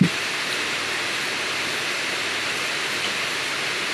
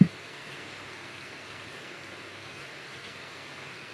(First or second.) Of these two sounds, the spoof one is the second